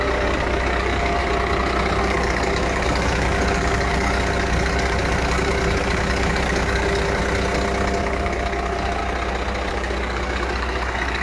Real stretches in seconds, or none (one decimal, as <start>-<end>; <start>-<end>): 1.2-2.0; 7.2-8.0; 9.0-9.7